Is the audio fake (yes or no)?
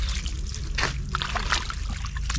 no